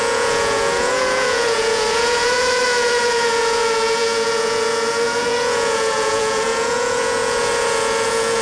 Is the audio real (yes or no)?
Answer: no